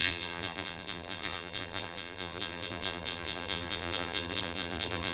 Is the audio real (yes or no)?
no